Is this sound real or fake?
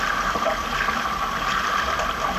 real